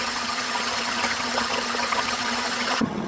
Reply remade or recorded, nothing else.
remade